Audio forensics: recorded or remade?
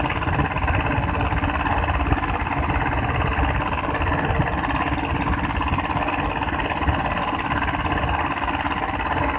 recorded